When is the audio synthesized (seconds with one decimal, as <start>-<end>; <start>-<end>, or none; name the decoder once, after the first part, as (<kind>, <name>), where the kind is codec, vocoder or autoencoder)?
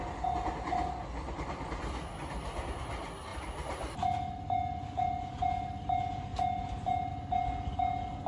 none